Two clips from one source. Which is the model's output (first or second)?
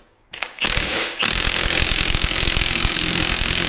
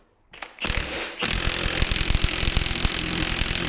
first